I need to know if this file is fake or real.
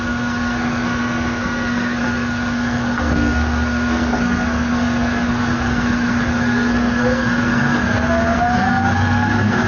fake